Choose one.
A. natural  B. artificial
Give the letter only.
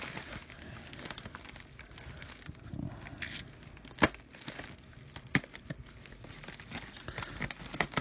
A